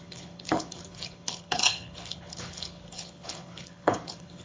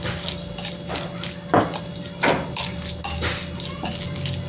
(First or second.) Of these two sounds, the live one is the second